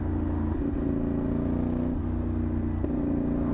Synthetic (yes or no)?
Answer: no